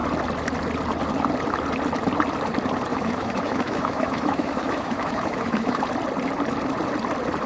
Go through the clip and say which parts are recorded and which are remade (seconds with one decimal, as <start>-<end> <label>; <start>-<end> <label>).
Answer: 0.0-2.9 recorded; 2.9-5.8 remade; 5.8-7.5 recorded